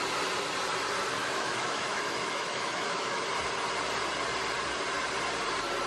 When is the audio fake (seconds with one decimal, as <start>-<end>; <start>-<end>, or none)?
1.2-3.2